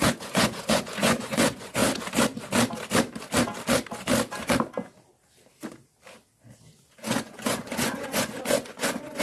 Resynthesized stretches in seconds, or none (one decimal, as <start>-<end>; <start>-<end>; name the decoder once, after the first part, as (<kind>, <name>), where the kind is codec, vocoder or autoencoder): 0.0-1.8 (vocoder, Vocos); 6.8-9.2